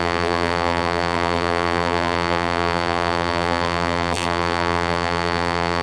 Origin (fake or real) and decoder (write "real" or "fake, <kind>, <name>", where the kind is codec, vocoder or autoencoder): fake, vocoder, BigVGAN v2